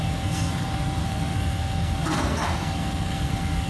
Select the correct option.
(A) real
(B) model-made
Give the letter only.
B